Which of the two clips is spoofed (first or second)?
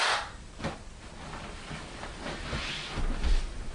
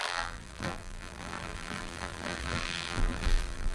second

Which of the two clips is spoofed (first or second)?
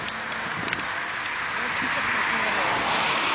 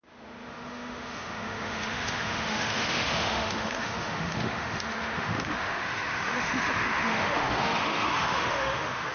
second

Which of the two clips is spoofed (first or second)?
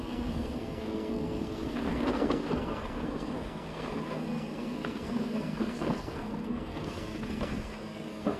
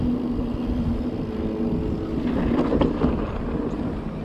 first